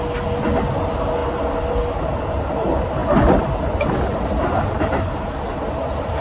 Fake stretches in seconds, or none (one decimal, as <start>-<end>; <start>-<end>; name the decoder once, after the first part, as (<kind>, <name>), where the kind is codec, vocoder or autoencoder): none